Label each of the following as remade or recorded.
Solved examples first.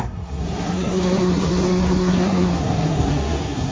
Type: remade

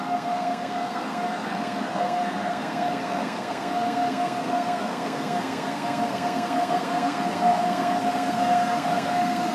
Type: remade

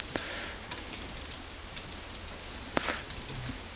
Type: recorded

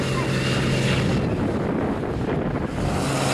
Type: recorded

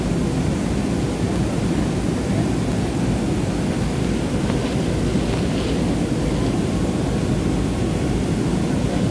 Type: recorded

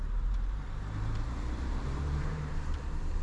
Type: remade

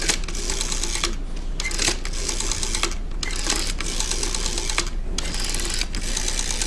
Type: recorded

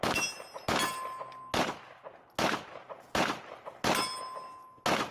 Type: recorded